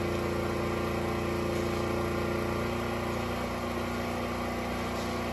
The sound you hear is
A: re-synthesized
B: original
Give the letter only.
B